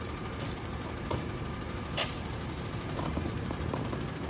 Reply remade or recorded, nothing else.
remade